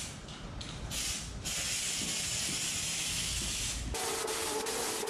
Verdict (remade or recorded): recorded